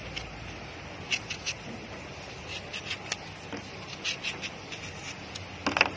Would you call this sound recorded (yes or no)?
yes